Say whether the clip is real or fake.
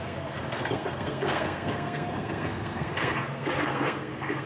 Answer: fake